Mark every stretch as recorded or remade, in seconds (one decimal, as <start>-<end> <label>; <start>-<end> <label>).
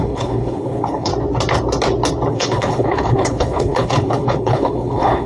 0.0-1.1 remade; 1.1-2.3 recorded; 2.3-5.3 remade